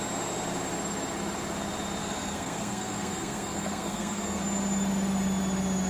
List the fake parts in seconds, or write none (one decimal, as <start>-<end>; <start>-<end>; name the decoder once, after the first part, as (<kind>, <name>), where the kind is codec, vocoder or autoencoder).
2.0-4.4 (codec, SNAC)